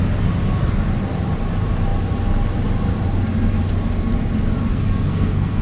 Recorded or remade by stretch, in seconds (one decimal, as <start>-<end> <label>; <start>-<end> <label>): 0.0-4.7 recorded; 4.7-5.6 remade